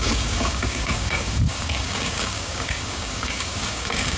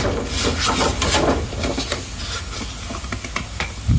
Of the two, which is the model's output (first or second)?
first